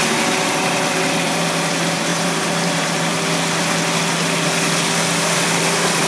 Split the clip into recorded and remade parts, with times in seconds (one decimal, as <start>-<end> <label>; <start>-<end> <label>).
0.0-2.1 recorded; 2.1-3.1 remade; 3.1-6.1 recorded